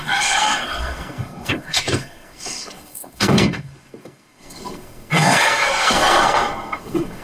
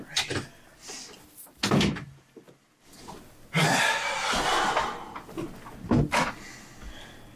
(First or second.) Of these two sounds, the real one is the second